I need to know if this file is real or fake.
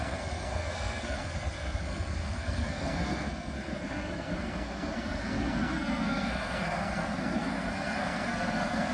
fake